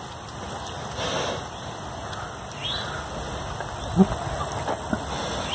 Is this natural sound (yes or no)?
yes